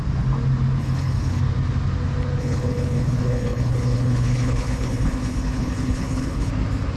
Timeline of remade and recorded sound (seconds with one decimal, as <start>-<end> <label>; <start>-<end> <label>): 0.0-0.8 recorded; 0.8-1.4 remade; 1.4-2.4 recorded; 2.4-6.5 remade; 6.5-7.0 recorded